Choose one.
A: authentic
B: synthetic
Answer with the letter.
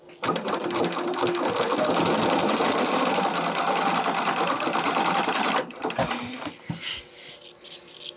A